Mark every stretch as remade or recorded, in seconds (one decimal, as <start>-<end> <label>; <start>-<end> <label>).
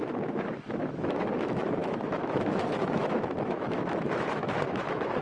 0.0-5.2 remade